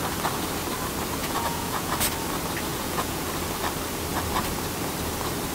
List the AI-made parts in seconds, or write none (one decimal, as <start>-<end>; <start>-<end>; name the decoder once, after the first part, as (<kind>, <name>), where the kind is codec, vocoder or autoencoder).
1.2-1.9 (vocoder, Vocos); 2.7-3.2